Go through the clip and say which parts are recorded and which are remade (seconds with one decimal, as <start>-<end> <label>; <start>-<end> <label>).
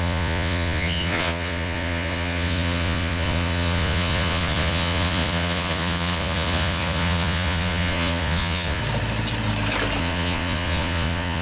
0.0-8.8 remade; 8.8-10.0 recorded; 10.0-11.4 remade